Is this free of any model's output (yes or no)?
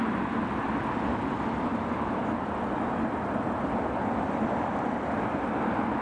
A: yes